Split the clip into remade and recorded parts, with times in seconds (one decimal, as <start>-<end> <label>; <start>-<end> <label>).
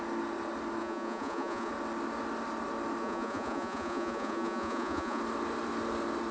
0.0-0.8 recorded; 0.8-1.7 remade; 1.7-3.0 recorded; 3.0-5.2 remade; 5.2-6.3 recorded